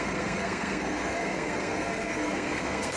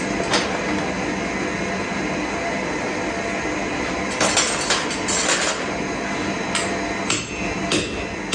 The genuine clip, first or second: second